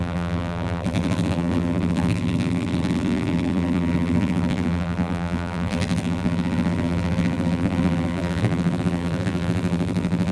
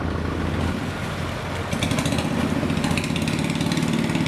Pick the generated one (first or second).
first